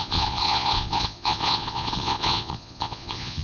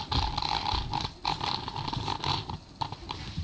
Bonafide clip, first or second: second